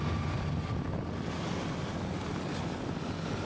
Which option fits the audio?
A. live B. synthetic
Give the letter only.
A